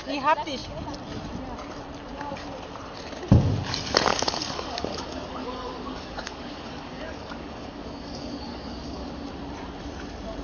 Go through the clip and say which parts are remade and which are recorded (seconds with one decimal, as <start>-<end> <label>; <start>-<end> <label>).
0.0-4.1 recorded; 4.1-9.1 remade; 9.1-10.4 recorded